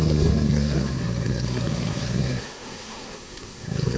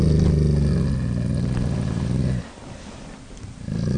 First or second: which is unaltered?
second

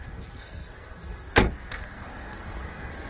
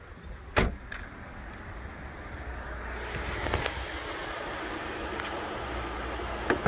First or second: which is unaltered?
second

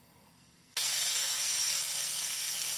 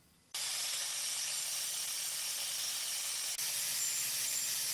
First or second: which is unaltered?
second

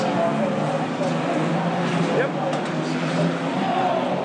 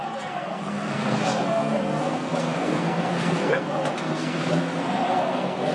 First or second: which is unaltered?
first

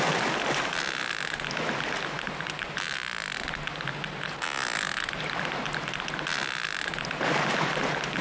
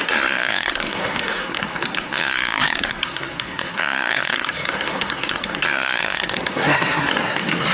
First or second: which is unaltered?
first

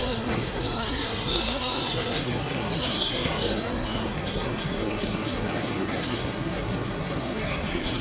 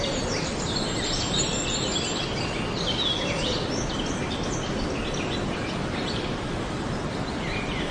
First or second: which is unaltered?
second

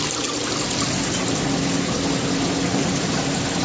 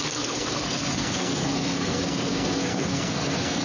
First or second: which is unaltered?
first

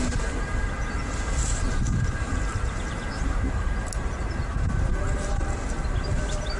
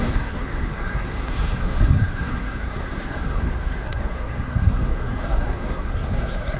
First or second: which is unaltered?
first